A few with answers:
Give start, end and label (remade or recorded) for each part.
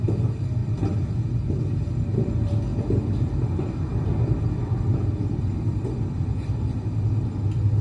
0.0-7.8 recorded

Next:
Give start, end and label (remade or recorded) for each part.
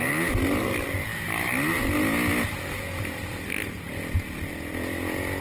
0.0-5.4 recorded